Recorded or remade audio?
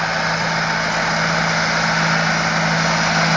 recorded